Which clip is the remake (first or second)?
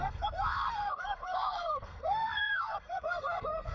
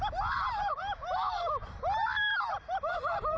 first